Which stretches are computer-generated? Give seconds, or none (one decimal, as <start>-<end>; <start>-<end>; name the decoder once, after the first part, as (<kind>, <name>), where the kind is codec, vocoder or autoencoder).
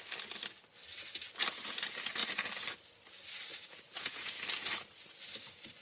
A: 3.5-4.4 (vocoder, Vocos)